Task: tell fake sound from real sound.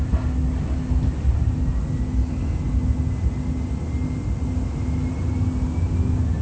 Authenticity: real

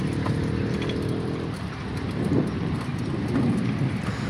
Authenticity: real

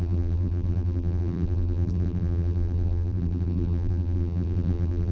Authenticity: fake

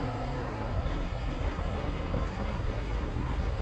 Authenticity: fake